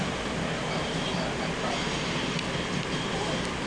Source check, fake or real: real